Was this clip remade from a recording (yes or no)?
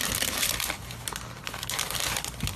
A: no